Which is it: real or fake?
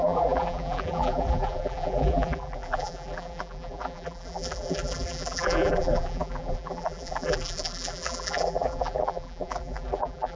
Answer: fake